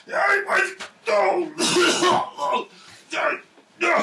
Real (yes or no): yes